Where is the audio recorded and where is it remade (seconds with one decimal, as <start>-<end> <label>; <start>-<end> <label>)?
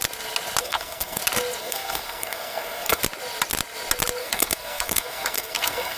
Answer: 0.0-0.6 recorded; 0.6-1.2 remade; 1.2-1.6 recorded; 1.6-3.0 remade; 3.0-4.2 recorded; 4.2-6.0 remade